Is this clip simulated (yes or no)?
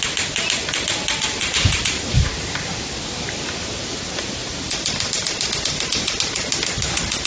no